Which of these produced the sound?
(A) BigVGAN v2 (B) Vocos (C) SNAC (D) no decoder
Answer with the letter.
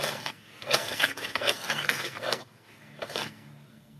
C